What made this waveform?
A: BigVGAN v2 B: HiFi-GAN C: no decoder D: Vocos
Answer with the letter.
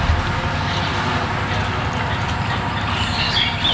C